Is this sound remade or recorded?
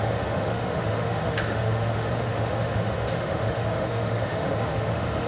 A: remade